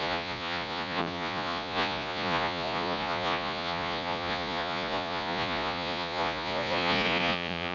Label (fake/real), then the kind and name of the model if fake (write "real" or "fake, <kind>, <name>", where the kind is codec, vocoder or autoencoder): fake, vocoder, Vocos